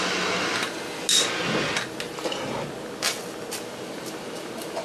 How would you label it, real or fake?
real